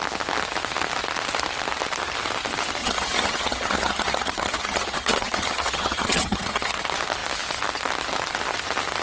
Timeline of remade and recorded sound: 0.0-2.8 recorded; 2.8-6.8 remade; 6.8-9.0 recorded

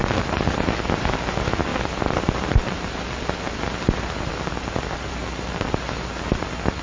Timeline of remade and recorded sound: 0.0-6.8 recorded

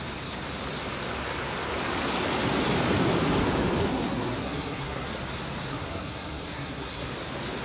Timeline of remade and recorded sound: 0.0-3.8 recorded; 3.8-5.1 remade; 5.1-5.7 recorded; 5.7-7.1 remade; 7.1-7.6 recorded

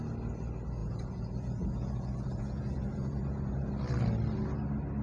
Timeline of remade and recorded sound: 0.0-0.8 recorded; 0.8-3.7 remade; 3.7-5.0 recorded

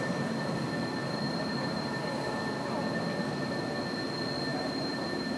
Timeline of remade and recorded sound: 0.0-1.0 recorded; 1.0-2.0 remade; 2.0-4.5 recorded; 4.5-5.4 remade

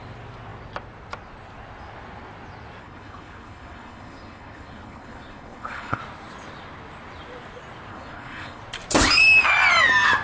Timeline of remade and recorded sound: 0.0-2.8 recorded; 2.8-6.0 remade; 6.0-7.9 recorded; 7.9-8.6 remade; 8.6-10.2 recorded

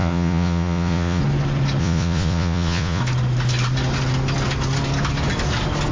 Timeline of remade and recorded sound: 0.0-1.2 remade; 1.2-1.8 recorded; 1.8-3.0 remade; 3.0-5.9 recorded